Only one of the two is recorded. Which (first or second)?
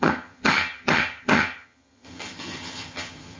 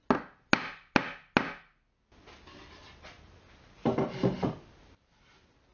second